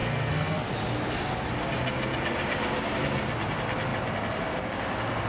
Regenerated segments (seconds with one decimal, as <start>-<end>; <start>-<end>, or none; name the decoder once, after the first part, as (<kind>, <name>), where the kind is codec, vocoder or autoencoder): 0.0-0.7 (codec, SNAC)